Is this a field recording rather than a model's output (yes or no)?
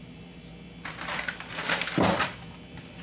no